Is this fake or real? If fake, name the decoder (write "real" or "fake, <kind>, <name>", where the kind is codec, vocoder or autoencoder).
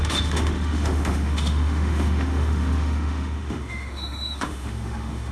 fake, autoencoder, DAC-VAE